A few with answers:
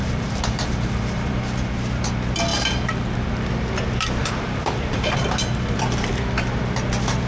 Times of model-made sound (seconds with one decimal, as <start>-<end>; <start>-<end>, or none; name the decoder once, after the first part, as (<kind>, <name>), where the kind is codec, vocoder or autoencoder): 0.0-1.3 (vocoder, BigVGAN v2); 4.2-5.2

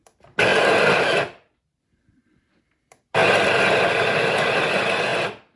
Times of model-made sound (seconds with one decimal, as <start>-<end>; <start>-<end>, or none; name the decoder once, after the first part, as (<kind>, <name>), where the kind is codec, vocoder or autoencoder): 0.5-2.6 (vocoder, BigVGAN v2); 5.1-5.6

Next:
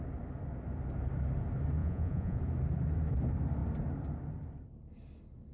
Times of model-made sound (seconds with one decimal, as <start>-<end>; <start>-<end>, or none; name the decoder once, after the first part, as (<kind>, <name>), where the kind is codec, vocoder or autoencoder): 1.8-2.4 (vocoder, Vocos)

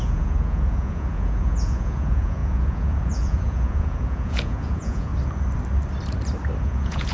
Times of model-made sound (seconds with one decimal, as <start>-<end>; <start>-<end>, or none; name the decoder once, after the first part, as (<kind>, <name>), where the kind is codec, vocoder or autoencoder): 0.0-5.1 (vocoder, Vocos); 6.6-7.1